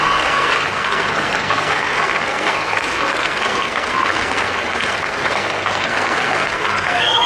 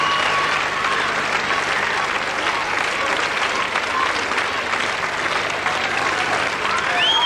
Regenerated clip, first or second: first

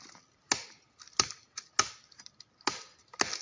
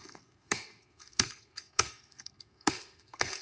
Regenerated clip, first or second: second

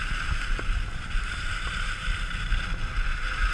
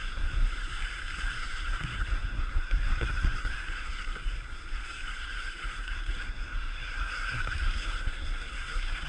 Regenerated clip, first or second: second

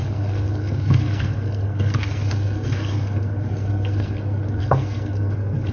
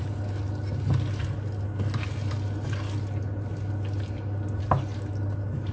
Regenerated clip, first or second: first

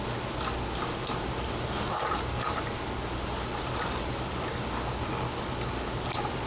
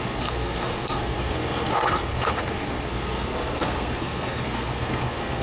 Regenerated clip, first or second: second